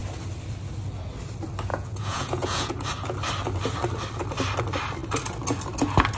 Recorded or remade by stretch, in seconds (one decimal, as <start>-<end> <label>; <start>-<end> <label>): 0.0-1.7 recorded; 1.7-2.7 remade; 2.7-6.2 recorded